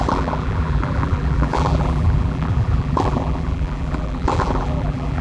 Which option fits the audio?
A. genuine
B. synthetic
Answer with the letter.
B